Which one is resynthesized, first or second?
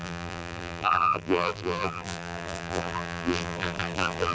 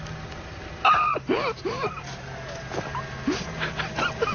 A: first